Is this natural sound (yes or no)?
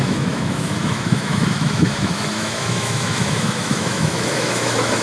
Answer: no